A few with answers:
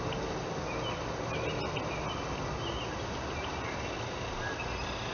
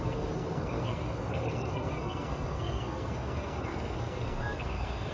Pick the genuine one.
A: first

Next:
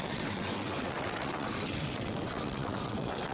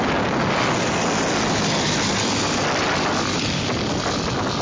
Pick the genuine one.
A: second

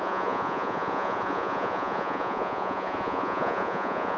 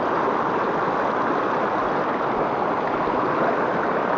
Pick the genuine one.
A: second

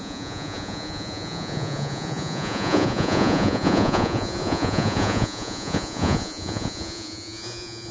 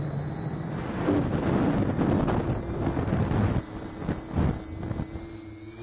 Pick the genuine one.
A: second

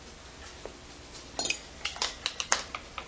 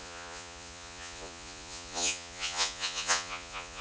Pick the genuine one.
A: first